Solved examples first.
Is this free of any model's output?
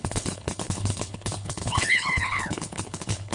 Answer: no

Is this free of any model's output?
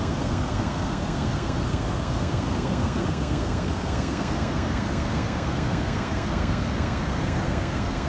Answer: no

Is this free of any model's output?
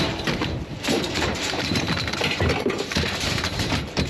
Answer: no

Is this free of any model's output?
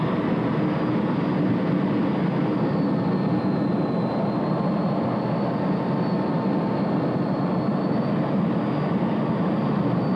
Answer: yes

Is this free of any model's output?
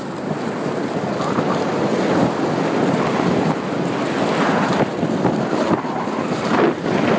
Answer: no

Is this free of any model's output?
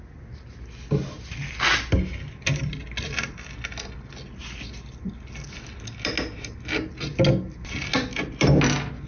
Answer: yes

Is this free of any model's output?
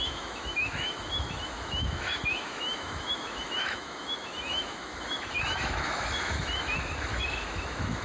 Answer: no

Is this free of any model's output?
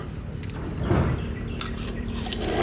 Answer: no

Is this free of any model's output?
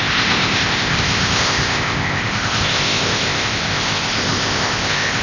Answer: no